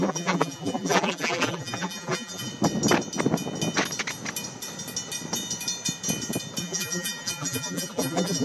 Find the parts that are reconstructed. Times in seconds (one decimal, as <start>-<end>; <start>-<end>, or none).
0.0-2.5; 6.6-8.4